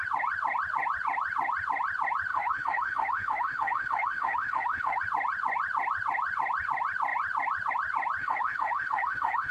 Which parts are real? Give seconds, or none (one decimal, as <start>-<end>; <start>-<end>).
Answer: 0.0-2.3; 5.0-8.2